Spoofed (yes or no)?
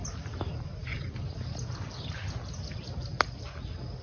no